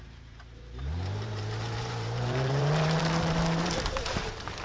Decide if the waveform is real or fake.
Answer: fake